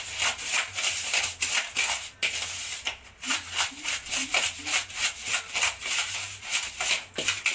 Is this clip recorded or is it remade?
recorded